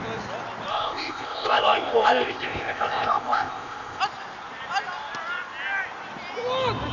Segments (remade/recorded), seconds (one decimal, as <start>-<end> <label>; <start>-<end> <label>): 0.0-0.7 recorded; 0.7-4.0 remade; 4.0-6.9 recorded